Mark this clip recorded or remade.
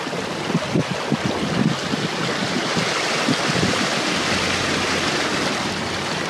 recorded